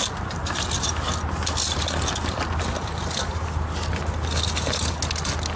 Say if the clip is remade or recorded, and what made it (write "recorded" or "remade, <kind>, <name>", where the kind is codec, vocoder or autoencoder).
recorded